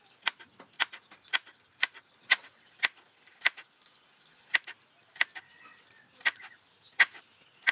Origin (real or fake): real